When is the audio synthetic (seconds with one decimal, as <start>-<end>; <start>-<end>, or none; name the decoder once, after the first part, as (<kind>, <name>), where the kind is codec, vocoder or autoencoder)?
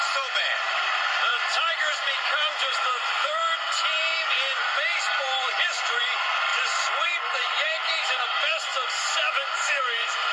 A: 0.0-10.3 (vocoder, BigVGAN v2)